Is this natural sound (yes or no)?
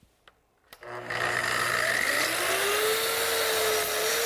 yes